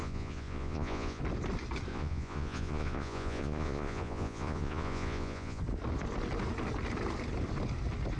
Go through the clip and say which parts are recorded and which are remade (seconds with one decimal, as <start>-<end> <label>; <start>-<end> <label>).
0.0-1.2 remade; 1.2-1.9 recorded; 1.9-5.6 remade; 5.6-8.2 recorded